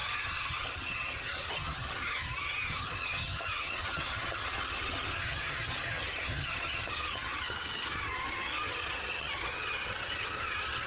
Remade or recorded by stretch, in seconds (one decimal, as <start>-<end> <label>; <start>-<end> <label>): 0.0-10.9 remade